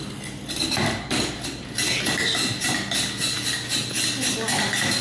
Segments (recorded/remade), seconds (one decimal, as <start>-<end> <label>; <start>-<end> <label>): 0.0-5.0 recorded